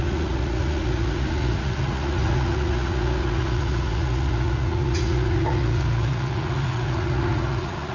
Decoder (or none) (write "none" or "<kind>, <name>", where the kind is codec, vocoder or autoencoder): vocoder, Vocos